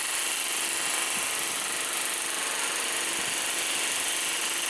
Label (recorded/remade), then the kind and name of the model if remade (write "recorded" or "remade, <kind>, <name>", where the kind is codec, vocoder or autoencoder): recorded